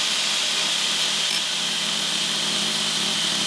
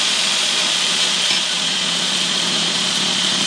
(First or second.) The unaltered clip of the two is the first